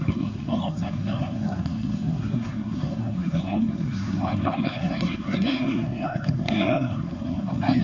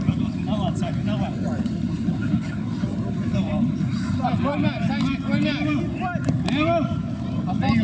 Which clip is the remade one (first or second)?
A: first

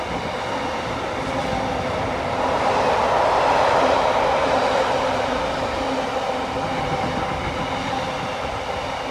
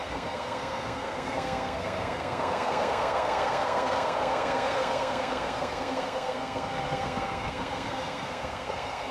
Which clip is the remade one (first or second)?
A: second